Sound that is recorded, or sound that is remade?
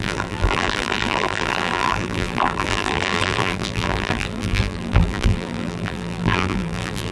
remade